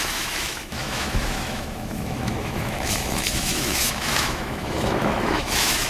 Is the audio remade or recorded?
remade